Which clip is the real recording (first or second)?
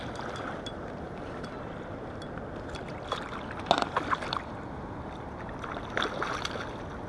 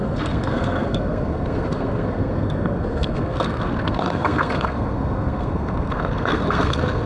first